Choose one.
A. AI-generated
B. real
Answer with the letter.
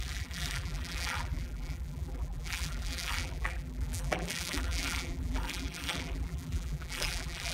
A